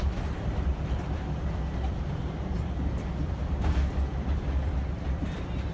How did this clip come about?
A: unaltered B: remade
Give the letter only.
B